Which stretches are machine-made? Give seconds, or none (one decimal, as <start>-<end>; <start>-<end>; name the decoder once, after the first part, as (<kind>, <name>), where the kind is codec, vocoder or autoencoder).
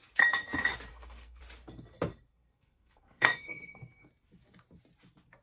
0.9-1.4 (codec, SNAC); 2.3-4.1